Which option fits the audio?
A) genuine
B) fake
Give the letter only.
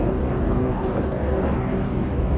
B